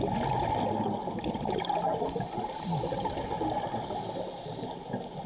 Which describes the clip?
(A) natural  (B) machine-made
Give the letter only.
A